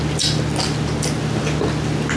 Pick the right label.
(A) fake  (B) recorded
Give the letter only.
B